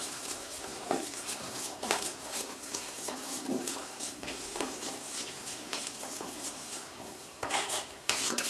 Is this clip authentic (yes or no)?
no